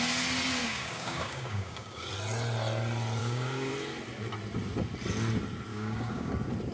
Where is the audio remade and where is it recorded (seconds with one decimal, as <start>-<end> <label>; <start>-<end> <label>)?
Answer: 0.0-0.6 recorded; 0.6-2.1 remade; 2.1-3.2 recorded; 3.2-3.7 remade; 3.7-5.7 recorded; 5.7-6.3 remade; 6.3-6.7 recorded